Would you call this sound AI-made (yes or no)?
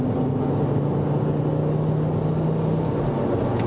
no